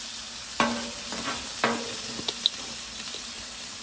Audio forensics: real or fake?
real